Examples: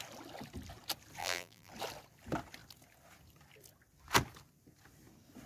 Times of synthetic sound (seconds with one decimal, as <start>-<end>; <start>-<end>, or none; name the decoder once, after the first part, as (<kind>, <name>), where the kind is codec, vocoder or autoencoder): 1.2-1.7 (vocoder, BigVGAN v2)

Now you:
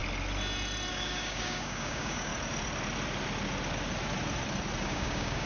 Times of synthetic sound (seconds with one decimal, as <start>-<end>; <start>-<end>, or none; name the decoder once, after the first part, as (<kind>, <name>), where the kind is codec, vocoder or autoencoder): 0.9-2.3 (codec, DAC); 4.8-5.5

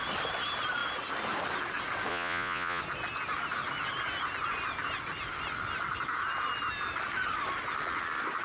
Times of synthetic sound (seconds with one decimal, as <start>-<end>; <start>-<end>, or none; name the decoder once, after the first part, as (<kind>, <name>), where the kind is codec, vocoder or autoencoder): 2.1-2.8 (vocoder, Vocos)

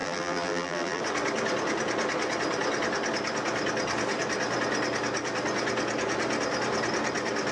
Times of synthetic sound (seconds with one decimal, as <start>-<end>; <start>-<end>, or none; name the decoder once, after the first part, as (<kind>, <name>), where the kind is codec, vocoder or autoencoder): 0.0-1.0 (vocoder, BigVGAN v2)

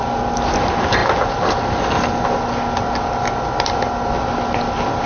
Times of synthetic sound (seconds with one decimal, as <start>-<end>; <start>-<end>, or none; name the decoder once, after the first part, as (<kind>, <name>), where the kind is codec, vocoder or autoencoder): none

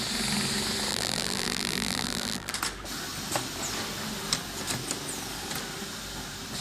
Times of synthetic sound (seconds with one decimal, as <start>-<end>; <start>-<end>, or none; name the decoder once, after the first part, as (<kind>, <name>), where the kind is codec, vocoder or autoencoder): 0.9-2.5 (vocoder, BigVGAN v2)

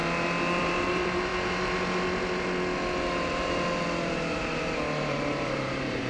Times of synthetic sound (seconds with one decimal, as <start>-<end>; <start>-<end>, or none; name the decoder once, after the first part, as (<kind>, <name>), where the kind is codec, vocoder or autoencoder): 0.6-1.3 (vocoder, BigVGAN v2); 5.0-6.1